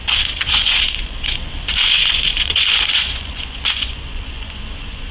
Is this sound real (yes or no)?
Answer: no